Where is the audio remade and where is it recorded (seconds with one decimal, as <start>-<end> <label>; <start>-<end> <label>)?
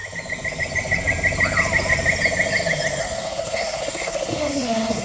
0.0-3.0 recorded; 3.0-5.0 remade